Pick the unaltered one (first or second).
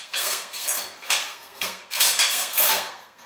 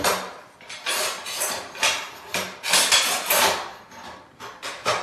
second